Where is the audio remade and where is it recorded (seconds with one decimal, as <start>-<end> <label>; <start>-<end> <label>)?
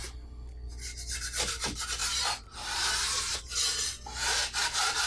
0.0-2.0 recorded; 2.0-3.4 remade; 3.4-5.1 recorded